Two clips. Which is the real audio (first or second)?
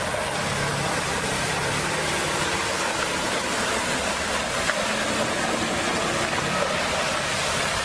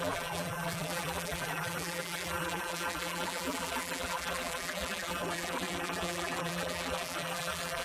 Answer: first